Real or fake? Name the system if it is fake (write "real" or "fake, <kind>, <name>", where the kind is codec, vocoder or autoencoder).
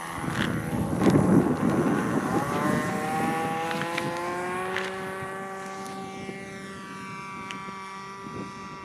real